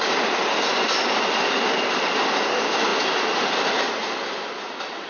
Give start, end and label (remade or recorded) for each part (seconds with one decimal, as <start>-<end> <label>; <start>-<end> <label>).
0.0-5.1 recorded